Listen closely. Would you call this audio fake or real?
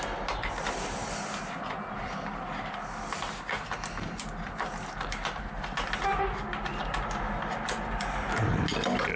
real